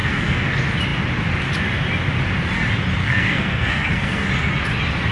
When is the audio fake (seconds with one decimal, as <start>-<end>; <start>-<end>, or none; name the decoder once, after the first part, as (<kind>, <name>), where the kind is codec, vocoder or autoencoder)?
0.0-0.5 (codec, SNAC); 3.0-4.3